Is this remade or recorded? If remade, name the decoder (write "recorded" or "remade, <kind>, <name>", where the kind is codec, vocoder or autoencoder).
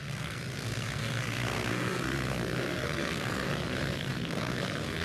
remade, codec, SNAC